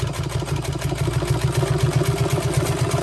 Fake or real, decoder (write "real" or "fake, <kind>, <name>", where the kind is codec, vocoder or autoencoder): real